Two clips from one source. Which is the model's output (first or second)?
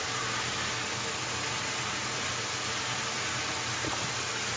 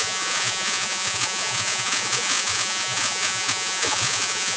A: second